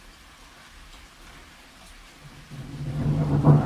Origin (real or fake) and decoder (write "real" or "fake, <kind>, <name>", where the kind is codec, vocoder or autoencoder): real